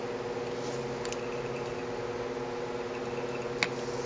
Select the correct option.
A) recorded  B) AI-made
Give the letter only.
A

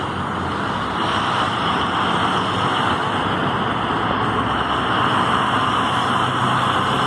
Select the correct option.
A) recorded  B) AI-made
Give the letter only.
A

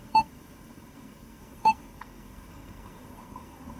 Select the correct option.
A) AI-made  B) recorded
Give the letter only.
A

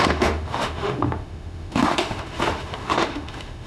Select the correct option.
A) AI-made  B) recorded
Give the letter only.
A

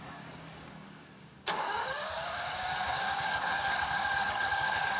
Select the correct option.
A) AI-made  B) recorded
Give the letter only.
A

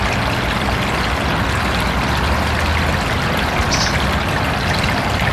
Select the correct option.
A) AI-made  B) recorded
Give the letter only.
B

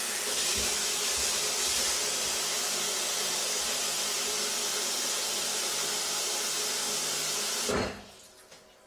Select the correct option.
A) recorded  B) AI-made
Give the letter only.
A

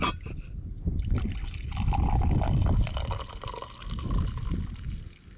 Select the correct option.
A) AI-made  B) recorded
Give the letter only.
B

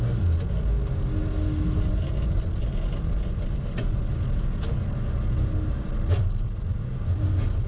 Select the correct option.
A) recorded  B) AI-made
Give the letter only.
A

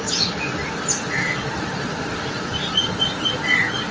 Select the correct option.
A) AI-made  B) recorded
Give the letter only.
B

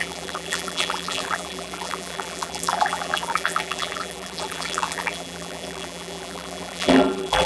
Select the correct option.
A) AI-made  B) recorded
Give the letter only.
A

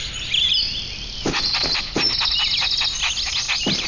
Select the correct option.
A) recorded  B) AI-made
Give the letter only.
A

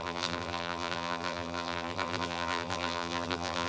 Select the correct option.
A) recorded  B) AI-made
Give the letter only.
B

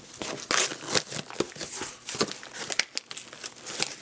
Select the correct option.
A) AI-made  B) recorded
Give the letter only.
B